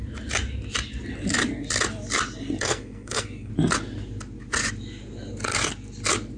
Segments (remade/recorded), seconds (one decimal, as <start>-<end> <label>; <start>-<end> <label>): 0.0-2.6 recorded; 2.6-3.5 remade; 3.5-6.4 recorded